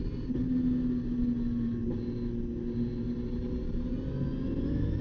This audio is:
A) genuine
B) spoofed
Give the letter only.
A